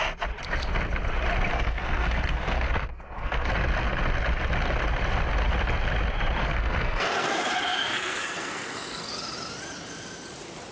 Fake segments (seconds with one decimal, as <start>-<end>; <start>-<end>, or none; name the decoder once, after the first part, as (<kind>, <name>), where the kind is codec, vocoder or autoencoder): 1.5-3.5 (codec, SNAC); 6.4-9.1